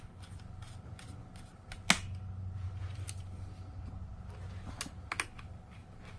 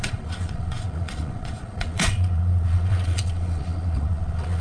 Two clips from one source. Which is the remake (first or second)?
second